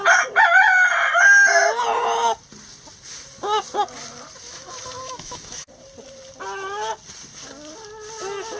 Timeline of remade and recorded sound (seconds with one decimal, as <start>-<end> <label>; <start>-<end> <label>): 0.0-4.5 recorded; 4.5-5.7 remade; 5.7-8.6 recorded